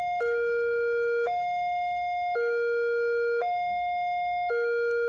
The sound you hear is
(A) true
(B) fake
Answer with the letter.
B